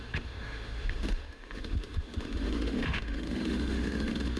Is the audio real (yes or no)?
no